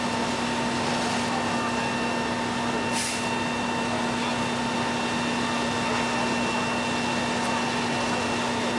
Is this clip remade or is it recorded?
recorded